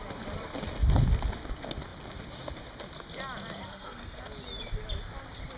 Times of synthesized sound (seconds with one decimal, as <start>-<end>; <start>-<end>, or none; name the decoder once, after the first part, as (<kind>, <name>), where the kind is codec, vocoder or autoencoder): 3.7-4.2 (codec, SNAC)

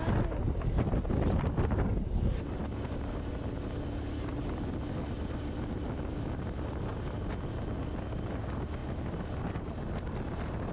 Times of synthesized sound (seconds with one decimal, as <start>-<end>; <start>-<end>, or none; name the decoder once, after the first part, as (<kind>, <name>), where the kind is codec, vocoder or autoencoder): none

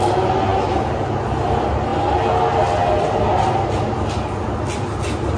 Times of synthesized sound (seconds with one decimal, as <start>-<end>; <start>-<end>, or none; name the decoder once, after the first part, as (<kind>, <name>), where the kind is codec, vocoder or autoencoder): none

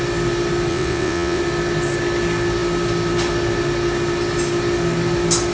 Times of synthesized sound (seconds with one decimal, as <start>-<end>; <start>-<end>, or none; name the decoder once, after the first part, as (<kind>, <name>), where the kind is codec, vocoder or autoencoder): 0.7-1.4 (vocoder, WaveNeXt)

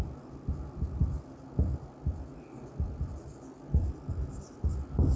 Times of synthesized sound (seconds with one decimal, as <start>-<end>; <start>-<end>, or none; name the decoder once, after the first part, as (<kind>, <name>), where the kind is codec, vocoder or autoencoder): none

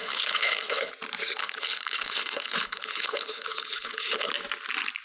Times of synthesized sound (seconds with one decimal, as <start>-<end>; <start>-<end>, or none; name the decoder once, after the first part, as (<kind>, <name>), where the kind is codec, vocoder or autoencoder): 0.0-0.9 (codec, HILCodec); 1.4-4.3